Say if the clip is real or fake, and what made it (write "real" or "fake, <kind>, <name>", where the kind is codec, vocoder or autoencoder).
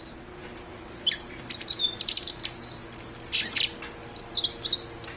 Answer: real